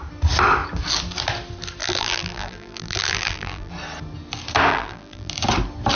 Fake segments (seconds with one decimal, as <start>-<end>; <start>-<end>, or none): 1.8-3.7; 4.7-5.3